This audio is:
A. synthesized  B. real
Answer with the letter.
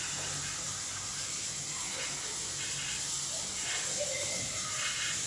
B